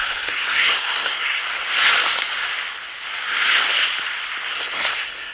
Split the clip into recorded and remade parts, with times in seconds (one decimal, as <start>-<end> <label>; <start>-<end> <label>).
0.0-1.4 remade; 1.4-4.6 recorded; 4.6-5.3 remade